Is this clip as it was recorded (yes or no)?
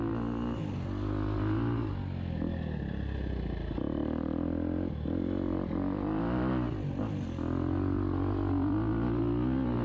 yes